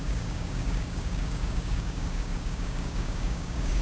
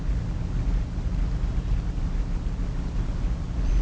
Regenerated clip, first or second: first